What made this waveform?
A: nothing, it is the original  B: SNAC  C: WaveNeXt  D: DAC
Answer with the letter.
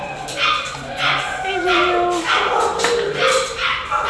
A